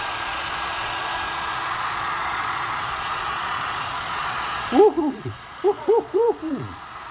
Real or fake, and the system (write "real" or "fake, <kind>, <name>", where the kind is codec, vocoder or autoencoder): fake, vocoder, Vocos